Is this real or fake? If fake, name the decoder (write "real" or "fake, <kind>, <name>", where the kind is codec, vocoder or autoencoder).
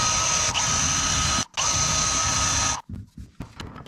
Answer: real